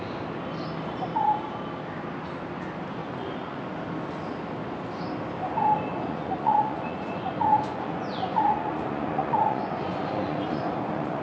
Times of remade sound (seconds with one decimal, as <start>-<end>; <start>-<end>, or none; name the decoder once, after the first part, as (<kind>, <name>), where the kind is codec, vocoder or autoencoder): 3.0-3.6 (vocoder, Vocos); 5.9-11.2